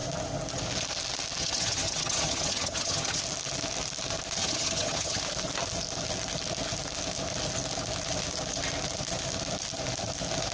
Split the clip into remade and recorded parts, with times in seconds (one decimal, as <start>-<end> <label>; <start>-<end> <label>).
0.0-1.4 recorded; 1.4-3.2 remade; 3.2-4.4 recorded; 4.4-5.2 remade; 5.2-10.5 recorded